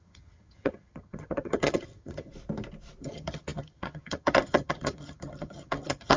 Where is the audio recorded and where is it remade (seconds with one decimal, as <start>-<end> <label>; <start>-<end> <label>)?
0.0-2.3 remade; 2.3-3.0 recorded; 3.0-6.2 remade